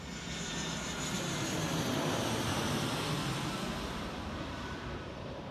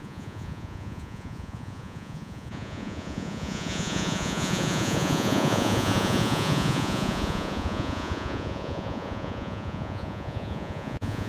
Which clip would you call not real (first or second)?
second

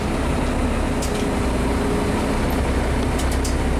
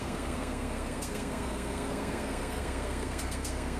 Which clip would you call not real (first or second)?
second